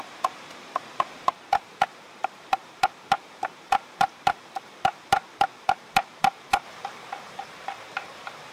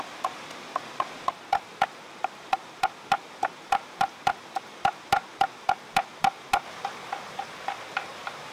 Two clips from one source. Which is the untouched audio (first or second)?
second